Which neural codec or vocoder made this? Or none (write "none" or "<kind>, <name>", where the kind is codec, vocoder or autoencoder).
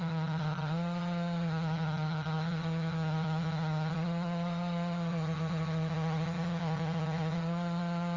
vocoder, HiFi-GAN